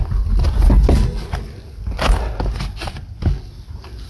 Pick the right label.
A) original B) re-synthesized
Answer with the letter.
A